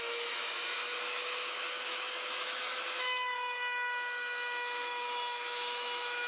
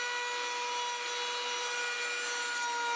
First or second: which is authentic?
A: second